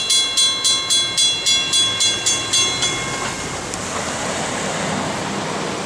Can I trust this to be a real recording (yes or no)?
yes